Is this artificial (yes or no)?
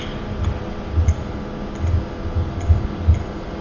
no